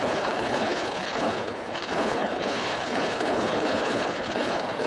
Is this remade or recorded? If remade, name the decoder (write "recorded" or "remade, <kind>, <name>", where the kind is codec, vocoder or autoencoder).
remade, codec, HILCodec